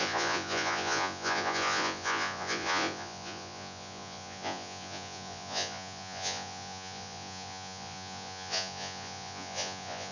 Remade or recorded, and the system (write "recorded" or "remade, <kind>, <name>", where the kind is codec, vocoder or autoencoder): remade, vocoder, Vocos